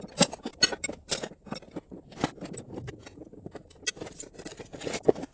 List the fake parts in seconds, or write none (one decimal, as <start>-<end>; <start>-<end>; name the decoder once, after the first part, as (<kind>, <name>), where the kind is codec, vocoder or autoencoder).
4.5-5.3 (vocoder, Vocos)